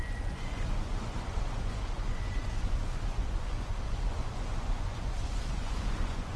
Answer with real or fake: fake